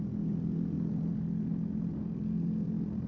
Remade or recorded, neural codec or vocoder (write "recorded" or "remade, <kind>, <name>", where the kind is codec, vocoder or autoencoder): recorded